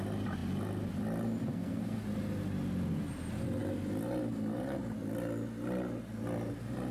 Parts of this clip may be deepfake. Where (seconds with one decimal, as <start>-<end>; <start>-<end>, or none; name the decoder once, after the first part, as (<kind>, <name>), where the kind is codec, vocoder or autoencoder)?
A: 1.5-2.0 (codec, SNAC)